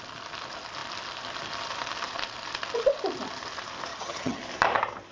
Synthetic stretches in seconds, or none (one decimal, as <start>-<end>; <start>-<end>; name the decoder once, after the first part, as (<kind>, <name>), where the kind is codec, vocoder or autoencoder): 3.9-4.4 (vocoder, HiFi-GAN)